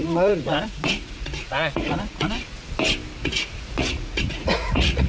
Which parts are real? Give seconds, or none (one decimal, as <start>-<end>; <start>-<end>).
2.4-3.2